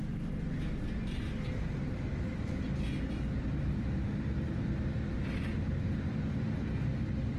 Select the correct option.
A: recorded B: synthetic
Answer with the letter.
A